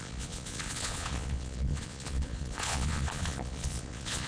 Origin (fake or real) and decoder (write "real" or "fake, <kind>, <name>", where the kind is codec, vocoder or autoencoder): fake, vocoder, Vocos